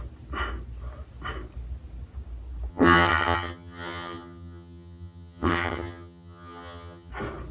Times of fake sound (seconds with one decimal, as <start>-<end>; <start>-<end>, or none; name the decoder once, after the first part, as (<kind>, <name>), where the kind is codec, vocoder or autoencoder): 2.7-7.1 (vocoder, HiFi-GAN)